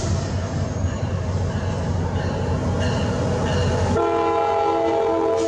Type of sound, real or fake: real